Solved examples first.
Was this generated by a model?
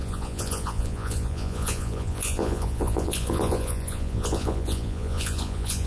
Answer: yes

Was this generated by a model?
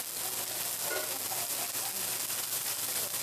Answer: no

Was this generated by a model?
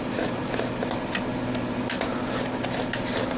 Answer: no